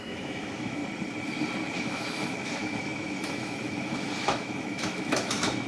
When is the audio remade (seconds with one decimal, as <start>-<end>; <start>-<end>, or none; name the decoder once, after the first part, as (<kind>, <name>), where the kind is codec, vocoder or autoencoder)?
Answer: 0.0-0.8 (autoencoder, DAC-VAE); 1.7-5.7